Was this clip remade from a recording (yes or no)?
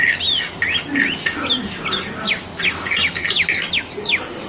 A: no